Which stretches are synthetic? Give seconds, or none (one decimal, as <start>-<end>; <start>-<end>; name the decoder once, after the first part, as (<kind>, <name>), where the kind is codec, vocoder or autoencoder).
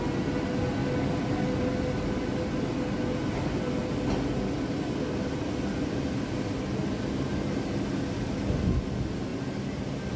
none